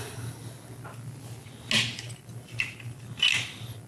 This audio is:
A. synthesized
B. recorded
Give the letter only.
B